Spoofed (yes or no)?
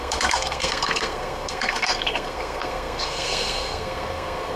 yes